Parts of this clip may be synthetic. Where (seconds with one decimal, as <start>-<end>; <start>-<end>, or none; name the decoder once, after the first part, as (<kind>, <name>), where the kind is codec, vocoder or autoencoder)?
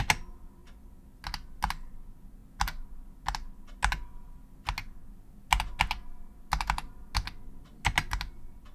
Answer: none